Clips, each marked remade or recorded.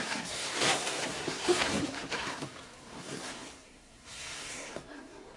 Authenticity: remade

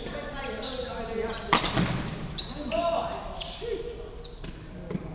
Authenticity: recorded